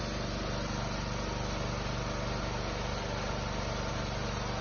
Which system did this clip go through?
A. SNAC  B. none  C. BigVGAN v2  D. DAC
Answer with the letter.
B